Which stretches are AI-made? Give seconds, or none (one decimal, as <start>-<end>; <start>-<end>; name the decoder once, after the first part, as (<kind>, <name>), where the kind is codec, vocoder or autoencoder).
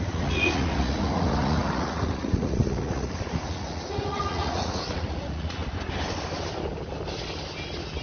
0.0-5.6 (vocoder, Vocos)